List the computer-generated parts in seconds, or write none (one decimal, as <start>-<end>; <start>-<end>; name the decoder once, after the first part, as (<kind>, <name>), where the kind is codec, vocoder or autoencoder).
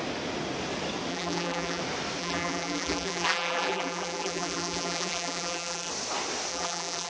1.1-1.8 (vocoder, BigVGAN v2); 2.2-5.9; 6.5-7.1